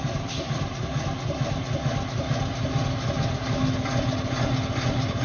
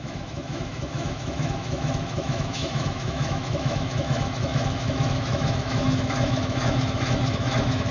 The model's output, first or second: second